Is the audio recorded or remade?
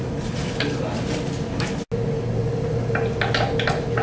recorded